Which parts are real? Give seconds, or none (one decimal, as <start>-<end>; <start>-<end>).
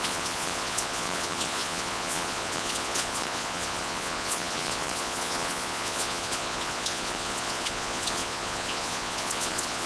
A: none